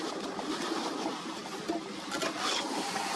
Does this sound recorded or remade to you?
recorded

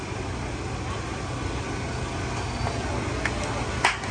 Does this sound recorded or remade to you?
recorded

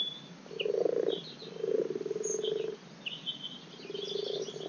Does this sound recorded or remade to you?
recorded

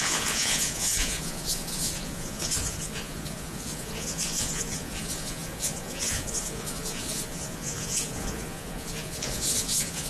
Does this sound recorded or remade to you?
remade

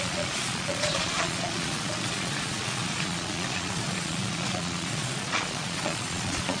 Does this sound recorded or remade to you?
remade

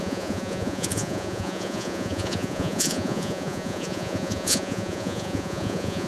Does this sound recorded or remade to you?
remade